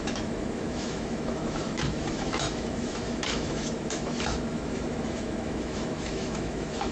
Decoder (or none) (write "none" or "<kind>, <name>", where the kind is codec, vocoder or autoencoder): autoencoder, DAC-VAE